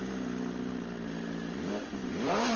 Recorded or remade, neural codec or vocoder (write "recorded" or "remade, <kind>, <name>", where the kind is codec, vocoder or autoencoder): recorded